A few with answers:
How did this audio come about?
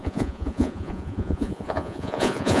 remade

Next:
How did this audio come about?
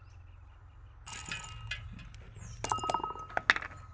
recorded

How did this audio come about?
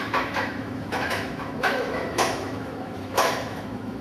remade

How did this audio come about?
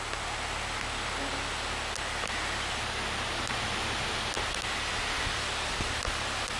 recorded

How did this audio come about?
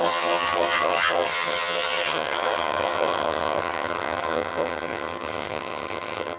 remade